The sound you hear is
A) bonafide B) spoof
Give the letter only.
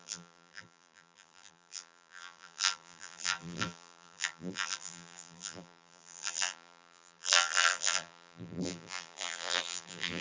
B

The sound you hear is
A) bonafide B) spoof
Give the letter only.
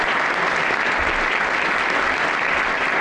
A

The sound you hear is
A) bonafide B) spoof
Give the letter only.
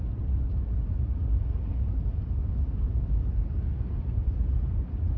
A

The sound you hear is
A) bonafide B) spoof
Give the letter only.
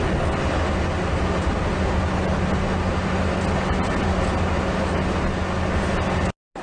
A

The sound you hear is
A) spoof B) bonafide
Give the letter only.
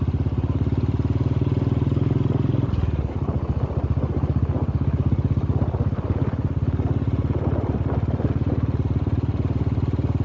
B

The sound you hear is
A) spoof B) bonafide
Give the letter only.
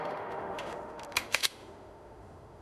A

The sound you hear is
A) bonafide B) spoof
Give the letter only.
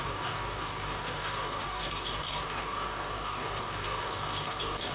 B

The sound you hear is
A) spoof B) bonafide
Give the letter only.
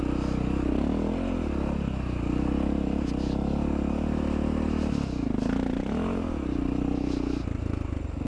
B